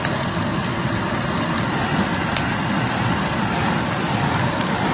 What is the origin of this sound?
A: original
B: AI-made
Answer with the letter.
A